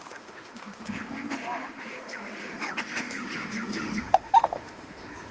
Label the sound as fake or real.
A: fake